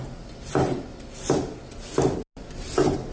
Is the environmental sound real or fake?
real